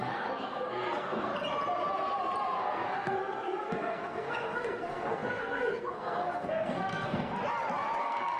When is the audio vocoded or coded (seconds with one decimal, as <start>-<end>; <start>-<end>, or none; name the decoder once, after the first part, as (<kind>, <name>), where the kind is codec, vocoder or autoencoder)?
0.0-1.3 (codec, SNAC); 2.6-7.4; 8.0-8.4